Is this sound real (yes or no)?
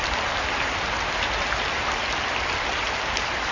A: yes